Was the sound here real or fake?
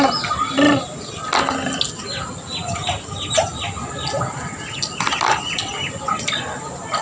real